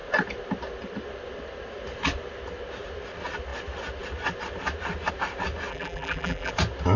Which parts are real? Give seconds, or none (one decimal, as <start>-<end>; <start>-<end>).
0.0-5.7; 6.5-7.0